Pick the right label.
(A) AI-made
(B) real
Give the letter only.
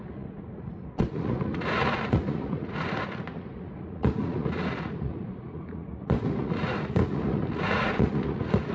A